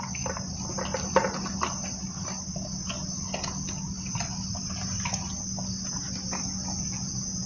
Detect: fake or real real